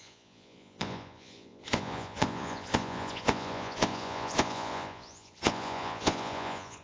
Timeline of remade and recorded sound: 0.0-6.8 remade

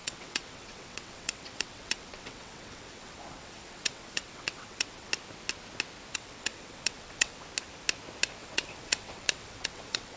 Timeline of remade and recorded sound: 0.0-5.1 remade; 5.1-6.1 recorded; 6.1-7.4 remade; 7.4-8.4 recorded; 8.4-10.2 remade

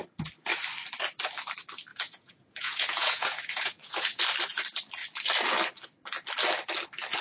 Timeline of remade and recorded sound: 0.0-1.9 recorded; 1.9-4.2 remade; 4.2-7.2 recorded